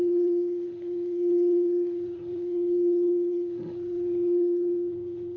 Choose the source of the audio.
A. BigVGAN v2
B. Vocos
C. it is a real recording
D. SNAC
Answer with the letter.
D